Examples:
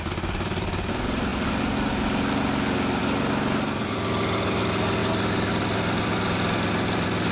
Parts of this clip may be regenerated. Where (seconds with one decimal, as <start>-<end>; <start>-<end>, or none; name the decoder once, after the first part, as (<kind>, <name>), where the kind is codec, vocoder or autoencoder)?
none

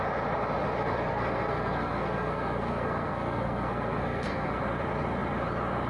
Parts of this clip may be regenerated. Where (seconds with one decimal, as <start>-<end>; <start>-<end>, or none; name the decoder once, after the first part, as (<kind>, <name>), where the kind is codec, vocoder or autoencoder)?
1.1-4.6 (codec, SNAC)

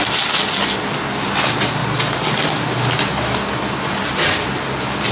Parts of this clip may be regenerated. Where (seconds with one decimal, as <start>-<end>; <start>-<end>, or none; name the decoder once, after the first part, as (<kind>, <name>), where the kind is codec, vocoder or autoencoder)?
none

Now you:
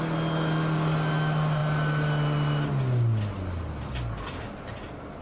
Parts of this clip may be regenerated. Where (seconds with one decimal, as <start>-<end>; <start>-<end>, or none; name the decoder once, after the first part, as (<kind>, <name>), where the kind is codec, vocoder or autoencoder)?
none